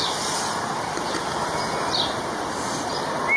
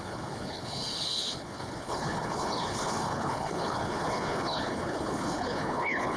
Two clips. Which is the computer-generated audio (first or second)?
second